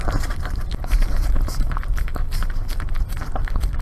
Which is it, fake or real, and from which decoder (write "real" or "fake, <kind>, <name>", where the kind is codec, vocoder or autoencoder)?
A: real